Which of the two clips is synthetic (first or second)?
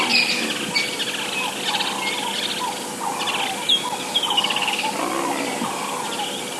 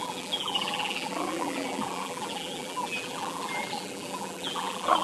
second